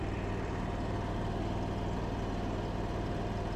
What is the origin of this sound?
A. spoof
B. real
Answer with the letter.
B